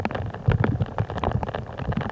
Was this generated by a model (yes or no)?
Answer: no